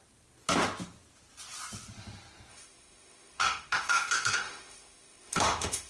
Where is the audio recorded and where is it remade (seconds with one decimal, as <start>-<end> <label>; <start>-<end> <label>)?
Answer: 0.0-2.5 recorded; 2.5-5.9 remade